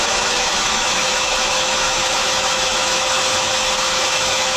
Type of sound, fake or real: fake